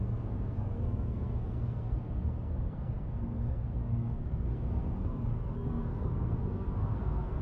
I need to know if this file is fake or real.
fake